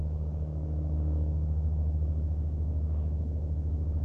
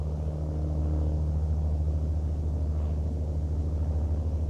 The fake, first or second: first